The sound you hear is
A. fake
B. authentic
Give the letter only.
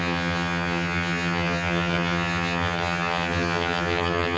A